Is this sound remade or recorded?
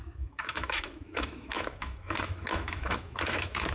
remade